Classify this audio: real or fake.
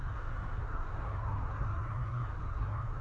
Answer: fake